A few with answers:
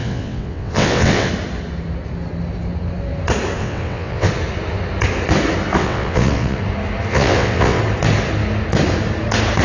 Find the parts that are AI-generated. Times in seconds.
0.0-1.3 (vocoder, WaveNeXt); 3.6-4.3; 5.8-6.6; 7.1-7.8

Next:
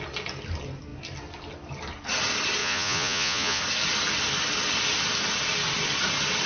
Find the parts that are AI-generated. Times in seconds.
2.6-3.6 (vocoder, Vocos)

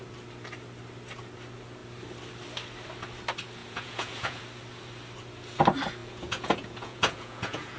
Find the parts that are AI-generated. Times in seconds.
3.6-4.4 (vocoder, Vocos); 6.0-7.8

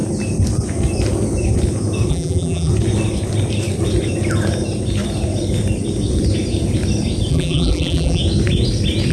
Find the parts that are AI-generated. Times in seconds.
2.1-2.7 (vocoder, BigVGAN v2); 7.3-8.2

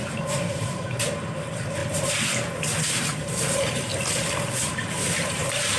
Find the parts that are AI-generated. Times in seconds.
0.0-1.8 (vocoder, BigVGAN v2); 2.9-3.9; 4.7-5.8

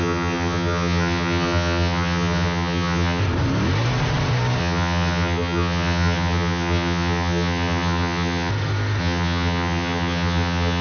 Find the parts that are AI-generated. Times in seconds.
0.0-3.2 (vocoder, HiFi-GAN); 4.6-8.5; 9.0-10.8

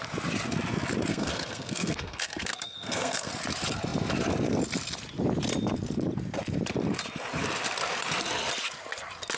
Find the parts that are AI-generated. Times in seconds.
1.1-3.3 (codec, SNAC)